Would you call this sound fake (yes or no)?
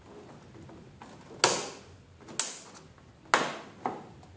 no